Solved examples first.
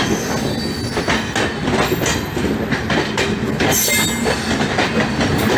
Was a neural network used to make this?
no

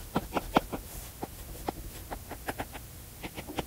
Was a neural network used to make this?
no